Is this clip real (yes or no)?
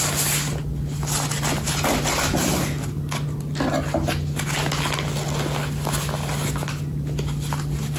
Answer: yes